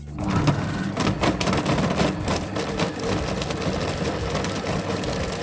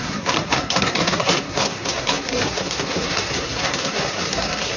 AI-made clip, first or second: second